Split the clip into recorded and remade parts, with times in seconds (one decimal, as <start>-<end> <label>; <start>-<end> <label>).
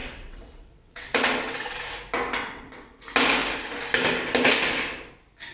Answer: 0.0-1.8 remade; 1.8-2.4 recorded; 2.4-3.0 remade; 3.0-5.5 recorded